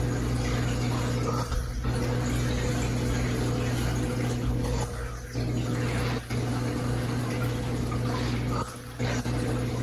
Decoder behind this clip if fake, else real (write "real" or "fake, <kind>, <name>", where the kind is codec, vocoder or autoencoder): real